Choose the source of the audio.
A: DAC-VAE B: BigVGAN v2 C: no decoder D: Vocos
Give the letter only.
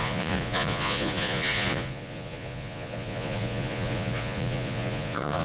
D